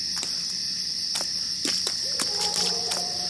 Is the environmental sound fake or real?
real